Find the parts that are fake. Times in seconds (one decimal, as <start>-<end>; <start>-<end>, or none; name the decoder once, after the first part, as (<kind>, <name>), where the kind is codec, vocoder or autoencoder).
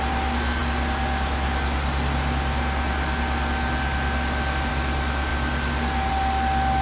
none